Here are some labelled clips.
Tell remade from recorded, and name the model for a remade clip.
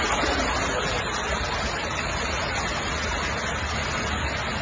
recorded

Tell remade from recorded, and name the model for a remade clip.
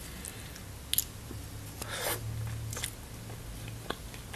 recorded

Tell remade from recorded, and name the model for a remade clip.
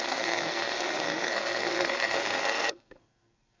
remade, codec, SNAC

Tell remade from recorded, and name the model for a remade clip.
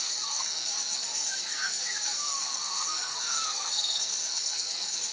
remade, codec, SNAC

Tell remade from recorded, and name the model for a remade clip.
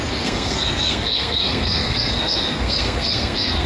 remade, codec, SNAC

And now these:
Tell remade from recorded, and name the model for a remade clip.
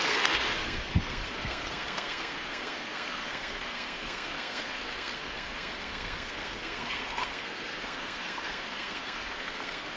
remade, codec, SNAC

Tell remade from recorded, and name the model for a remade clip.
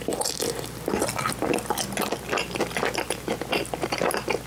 recorded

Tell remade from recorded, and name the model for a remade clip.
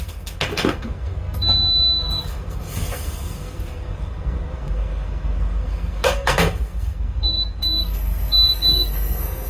remade, codec, SNAC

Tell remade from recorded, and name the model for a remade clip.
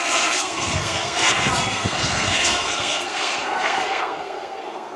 remade, codec, SNAC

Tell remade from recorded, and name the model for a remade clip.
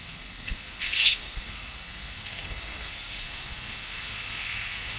remade, codec, SNAC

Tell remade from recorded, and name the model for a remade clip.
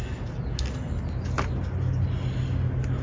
recorded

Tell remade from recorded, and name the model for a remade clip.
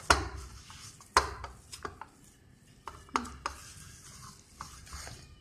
recorded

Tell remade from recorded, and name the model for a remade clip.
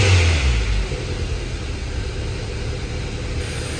recorded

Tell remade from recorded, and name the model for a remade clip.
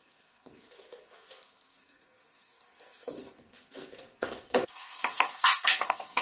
remade, codec, SNAC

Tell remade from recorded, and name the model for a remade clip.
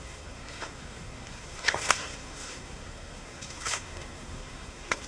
remade, codec, SNAC